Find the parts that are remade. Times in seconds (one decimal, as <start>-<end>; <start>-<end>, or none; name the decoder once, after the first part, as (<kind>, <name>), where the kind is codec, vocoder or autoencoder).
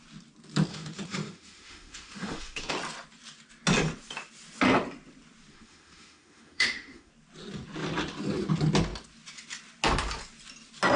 0.7-2.7 (autoencoder, DAC-VAE); 5.5-7.1